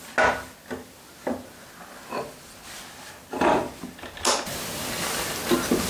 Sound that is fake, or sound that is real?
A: real